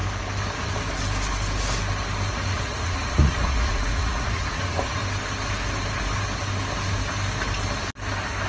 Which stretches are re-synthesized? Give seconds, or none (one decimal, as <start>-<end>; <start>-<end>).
2.3-5.0

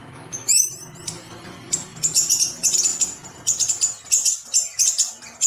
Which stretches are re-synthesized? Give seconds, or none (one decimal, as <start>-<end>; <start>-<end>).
0.0-0.7